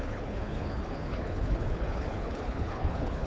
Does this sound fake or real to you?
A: fake